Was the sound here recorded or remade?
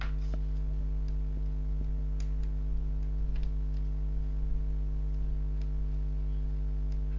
recorded